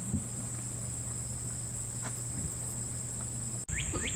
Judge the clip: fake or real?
real